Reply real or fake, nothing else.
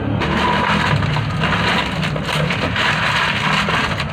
real